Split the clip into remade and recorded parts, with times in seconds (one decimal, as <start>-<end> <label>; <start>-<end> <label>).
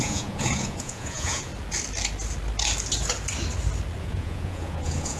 0.0-1.5 remade; 1.5-4.0 recorded; 4.0-5.2 remade